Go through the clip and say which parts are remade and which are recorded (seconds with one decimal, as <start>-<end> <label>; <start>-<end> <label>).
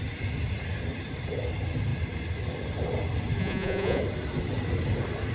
0.0-3.4 recorded; 3.4-4.0 remade; 4.0-5.3 recorded